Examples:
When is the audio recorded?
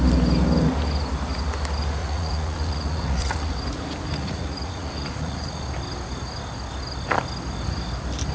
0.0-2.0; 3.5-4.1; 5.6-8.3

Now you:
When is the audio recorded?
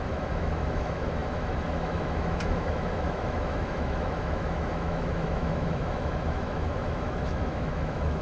none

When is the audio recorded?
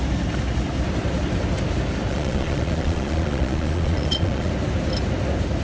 0.0-2.1; 4.5-5.6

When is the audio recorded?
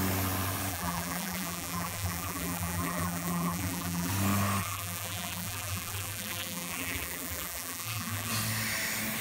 0.0-0.7; 4.1-4.6; 8.3-9.2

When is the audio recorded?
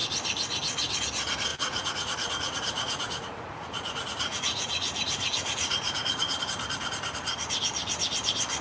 0.0-1.5; 6.4-8.6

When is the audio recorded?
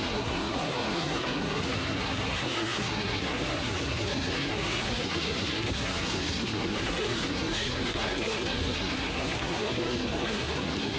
none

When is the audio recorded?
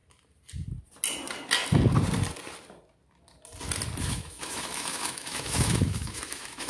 0.0-4.0